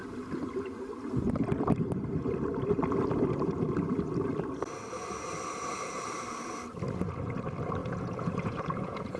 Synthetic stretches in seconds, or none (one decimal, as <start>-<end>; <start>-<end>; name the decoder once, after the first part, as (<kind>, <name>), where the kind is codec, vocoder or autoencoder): 7.8-9.2 (vocoder, Vocos)